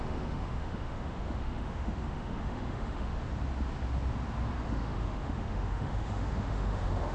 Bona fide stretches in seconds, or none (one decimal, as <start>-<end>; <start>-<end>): 3.2-4.7